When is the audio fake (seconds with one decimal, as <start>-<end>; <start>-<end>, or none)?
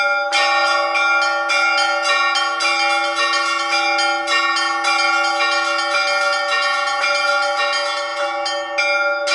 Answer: none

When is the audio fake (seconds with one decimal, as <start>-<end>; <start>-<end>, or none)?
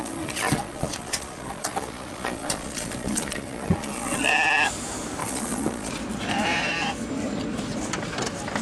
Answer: 0.0-4.3; 5.2-5.9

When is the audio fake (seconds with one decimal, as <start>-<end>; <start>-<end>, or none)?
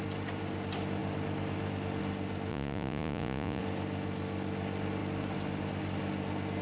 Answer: 2.5-3.6